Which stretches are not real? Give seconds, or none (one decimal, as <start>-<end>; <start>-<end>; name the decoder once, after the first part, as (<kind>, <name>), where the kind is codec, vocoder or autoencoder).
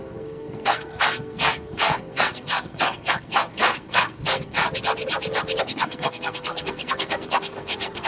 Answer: 0.0-4.6 (codec, SNAC); 5.6-8.1